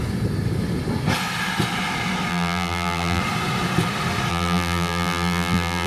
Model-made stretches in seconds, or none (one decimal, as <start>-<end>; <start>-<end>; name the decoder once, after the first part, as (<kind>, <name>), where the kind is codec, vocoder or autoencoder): 2.3-3.2 (vocoder, BigVGAN v2); 4.3-5.9